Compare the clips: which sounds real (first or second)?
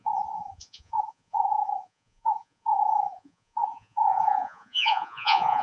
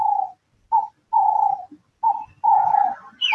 second